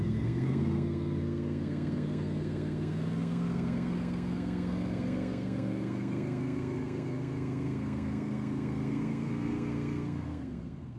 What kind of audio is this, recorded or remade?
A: remade